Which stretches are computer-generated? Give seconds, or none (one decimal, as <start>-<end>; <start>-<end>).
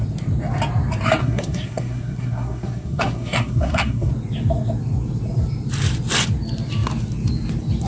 1.2-4.1